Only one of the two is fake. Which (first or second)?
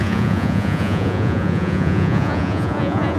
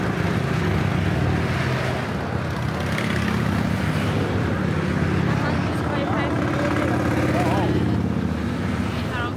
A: first